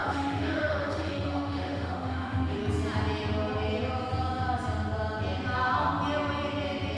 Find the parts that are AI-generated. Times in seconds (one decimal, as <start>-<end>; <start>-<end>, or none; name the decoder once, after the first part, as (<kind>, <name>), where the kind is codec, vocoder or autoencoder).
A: 0.0-2.6 (autoencoder, DAC-VAE)